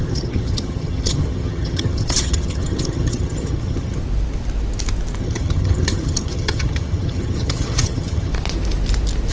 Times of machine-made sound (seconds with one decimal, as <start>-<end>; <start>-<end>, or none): 0.0-4.0; 5.2-8.3